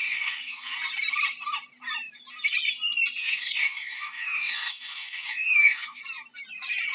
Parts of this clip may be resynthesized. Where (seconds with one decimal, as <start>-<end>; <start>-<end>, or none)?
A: 0.0-0.8; 3.2-6.0